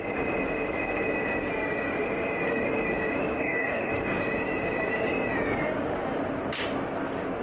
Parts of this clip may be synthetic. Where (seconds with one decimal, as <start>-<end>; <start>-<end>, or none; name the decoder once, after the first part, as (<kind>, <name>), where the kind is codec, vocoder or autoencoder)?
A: 3.3-3.9 (codec, DAC)